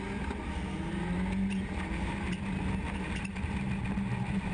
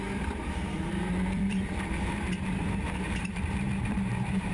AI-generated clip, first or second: second